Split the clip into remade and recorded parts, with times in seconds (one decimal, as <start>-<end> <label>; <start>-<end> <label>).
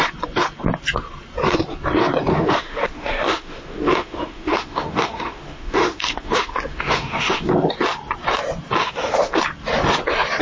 0.0-2.3 recorded; 2.3-7.5 remade; 7.5-8.8 recorded; 8.8-9.4 remade; 9.4-10.4 recorded